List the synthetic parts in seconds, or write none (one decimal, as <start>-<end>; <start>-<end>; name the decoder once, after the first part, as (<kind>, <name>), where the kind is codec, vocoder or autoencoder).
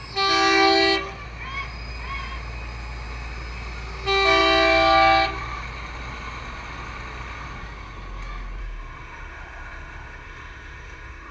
8.6-11.3 (autoencoder, DAC-VAE)